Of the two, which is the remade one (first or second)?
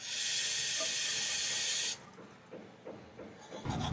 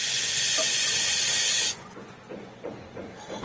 second